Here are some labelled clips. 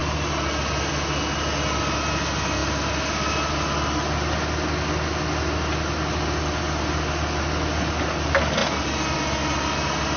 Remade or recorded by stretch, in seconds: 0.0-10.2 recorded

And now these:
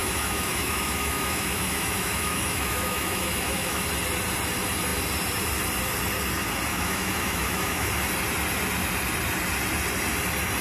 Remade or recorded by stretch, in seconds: 0.0-3.9 remade; 3.9-6.7 recorded; 6.7-7.9 remade; 7.9-10.6 recorded